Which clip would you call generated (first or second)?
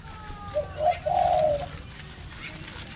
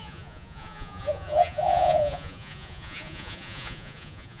second